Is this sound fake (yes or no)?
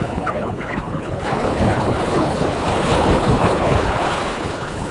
yes